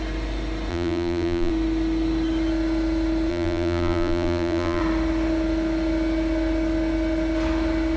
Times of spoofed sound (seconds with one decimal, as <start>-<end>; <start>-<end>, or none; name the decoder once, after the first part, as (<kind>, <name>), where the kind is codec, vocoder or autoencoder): 0.7-1.5 (vocoder, BigVGAN v2); 3.3-4.8